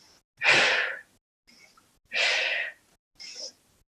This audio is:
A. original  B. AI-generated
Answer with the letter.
A